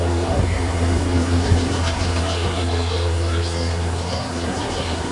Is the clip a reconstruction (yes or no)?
yes